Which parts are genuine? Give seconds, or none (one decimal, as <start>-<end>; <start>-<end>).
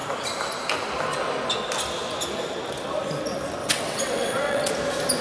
0.0-3.6; 4.7-5.2